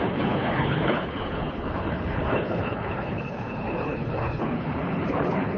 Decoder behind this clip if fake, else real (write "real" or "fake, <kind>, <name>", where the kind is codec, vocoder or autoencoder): fake, codec, HILCodec